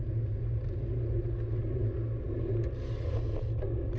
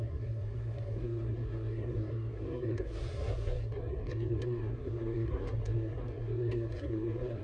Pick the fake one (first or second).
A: second